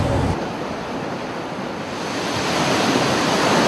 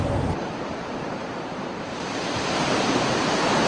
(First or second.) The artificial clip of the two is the second